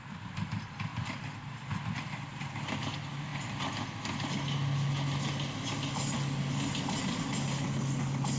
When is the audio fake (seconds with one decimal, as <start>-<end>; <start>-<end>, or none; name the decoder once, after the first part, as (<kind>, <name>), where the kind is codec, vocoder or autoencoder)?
0.0-3.3 (vocoder, BigVGAN v2)

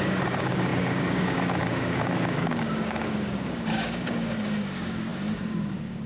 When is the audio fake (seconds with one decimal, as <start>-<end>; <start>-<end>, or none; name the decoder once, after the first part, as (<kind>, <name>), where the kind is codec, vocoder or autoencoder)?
0.0-6.1 (codec, DAC)

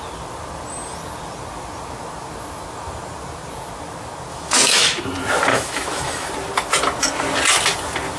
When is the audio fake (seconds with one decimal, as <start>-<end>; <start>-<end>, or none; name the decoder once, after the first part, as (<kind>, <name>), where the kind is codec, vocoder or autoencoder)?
4.3-5.0 (autoencoder, DAC-VAE); 5.5-6.3

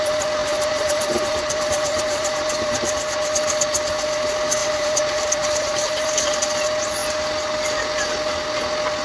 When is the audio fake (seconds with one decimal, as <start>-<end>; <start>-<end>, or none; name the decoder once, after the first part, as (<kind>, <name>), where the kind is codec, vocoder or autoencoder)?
0.4-2.8 (vocoder, BigVGAN v2); 4.6-6.3

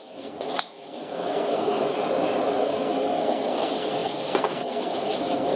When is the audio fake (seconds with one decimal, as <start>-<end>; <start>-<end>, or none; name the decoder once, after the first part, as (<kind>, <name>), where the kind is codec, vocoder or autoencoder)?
0.0-2.0 (codec, SNAC); 2.6-5.6

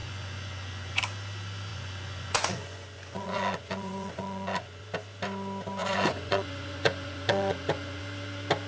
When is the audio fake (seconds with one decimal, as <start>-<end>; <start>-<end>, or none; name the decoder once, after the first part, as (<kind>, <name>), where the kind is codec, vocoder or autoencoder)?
0.0-1.0 (vocoder, Vocos); 1.7-4.8; 5.8-8.0

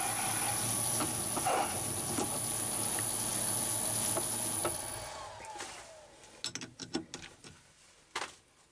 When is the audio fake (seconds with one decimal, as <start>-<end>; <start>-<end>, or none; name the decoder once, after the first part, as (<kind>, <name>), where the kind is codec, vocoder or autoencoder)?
none